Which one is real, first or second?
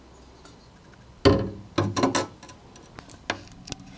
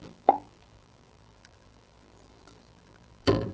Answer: first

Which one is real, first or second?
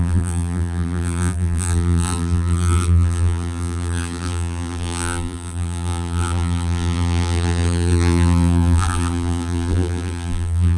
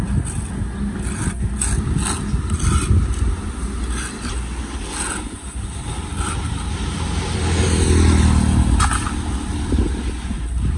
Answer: second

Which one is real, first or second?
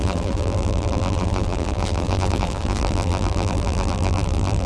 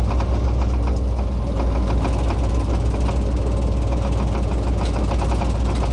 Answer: second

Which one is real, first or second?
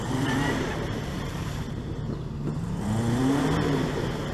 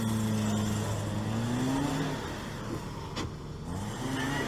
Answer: second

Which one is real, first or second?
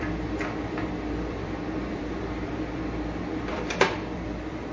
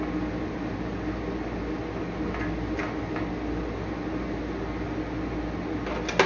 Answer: second